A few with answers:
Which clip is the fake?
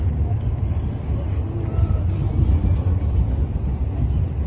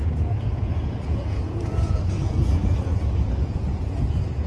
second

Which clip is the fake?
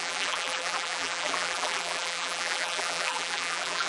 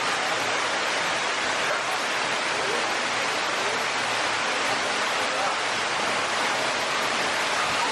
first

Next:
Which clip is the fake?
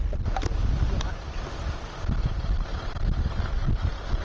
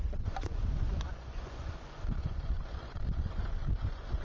second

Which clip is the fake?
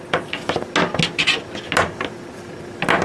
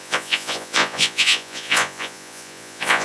second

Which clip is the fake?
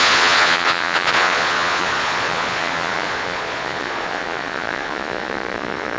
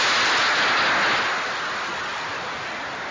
first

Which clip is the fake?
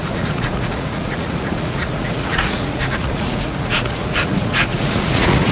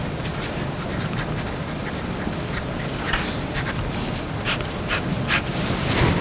first